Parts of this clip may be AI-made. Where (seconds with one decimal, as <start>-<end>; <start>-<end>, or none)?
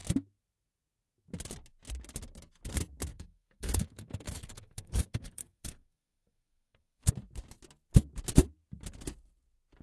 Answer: 3.1-7.1